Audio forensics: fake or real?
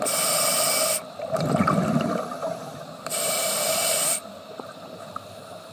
real